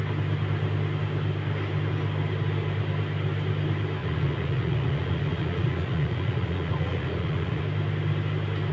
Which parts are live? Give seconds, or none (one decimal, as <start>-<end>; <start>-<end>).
0.0-4.0; 7.6-8.7